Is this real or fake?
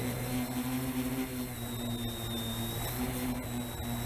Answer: real